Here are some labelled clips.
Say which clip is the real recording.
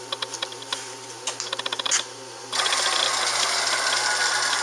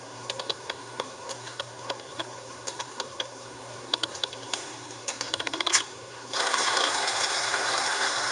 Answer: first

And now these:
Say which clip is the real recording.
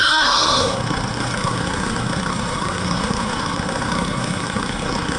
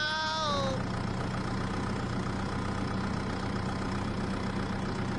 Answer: second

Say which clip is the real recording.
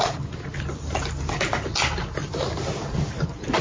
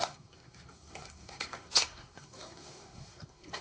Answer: first